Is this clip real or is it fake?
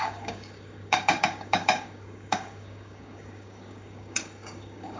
fake